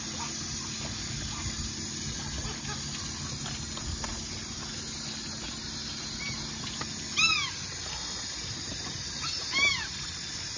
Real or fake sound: real